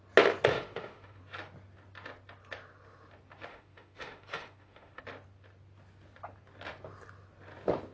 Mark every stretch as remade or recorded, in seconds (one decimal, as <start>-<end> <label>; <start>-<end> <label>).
0.0-0.5 recorded; 0.5-1.2 remade; 1.2-3.5 recorded; 3.5-5.0 remade; 5.0-7.9 recorded